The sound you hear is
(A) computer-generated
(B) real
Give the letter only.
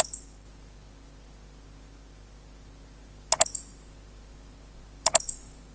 B